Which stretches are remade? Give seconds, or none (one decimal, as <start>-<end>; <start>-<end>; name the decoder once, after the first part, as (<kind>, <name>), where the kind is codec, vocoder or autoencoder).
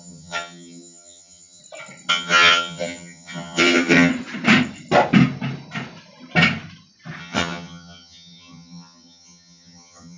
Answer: 0.0-1.6 (vocoder, HiFi-GAN); 2.1-4.1; 7.2-10.2